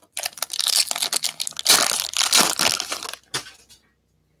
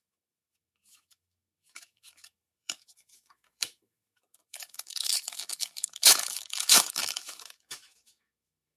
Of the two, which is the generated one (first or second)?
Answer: second